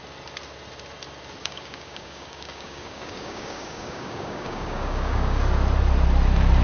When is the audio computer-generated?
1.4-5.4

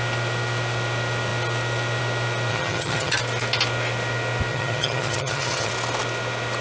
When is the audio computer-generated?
2.5-3.1; 4.5-5.7

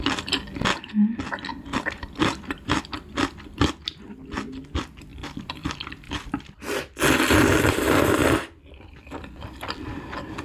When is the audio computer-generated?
1.5-2.8; 5.1-5.7; 8.2-9.1

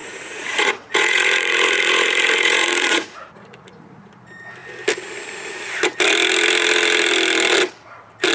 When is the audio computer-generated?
0.0-4.1